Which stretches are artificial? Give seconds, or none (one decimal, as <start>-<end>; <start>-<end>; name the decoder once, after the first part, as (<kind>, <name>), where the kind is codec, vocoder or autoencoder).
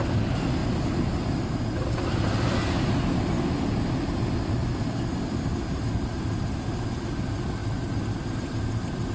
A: none